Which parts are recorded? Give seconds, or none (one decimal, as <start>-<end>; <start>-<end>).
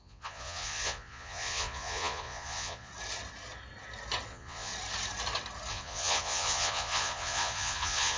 2.9-4.3; 4.7-5.7